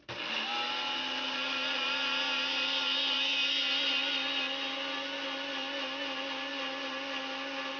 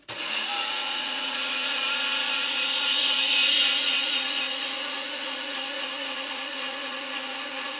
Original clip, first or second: first